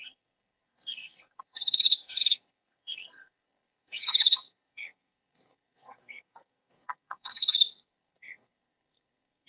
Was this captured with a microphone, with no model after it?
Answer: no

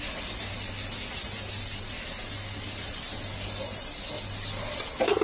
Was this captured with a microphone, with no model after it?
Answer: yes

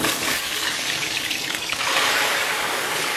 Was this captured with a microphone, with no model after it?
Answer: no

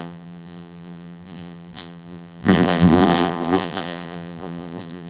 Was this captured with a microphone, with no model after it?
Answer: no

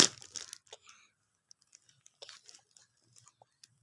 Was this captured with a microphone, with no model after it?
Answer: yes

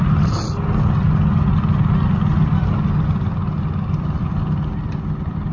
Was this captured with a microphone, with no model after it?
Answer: yes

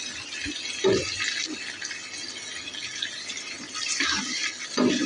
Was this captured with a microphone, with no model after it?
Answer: yes